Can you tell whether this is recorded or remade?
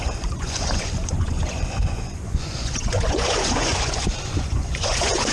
remade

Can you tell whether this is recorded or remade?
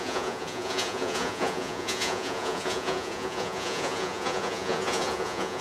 remade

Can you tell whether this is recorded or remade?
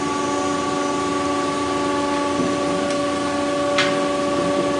recorded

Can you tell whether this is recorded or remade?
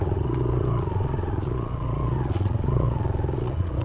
remade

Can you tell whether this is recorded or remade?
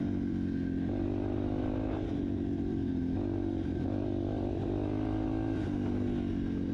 recorded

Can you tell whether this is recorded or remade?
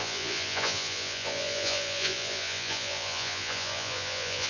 remade